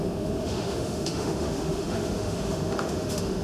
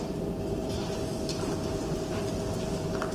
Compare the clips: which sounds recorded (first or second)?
second